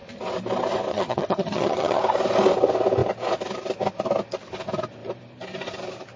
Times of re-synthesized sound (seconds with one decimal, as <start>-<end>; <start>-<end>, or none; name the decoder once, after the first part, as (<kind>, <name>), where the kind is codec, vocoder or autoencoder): 0.9-2.0 (vocoder, HiFi-GAN)